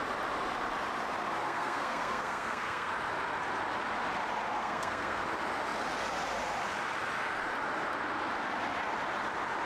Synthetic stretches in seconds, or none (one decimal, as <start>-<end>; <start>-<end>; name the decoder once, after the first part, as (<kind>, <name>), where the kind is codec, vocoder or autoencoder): 1.4-2.9 (codec, SNAC); 4.6-5.2